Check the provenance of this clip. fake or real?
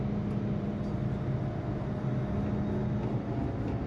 real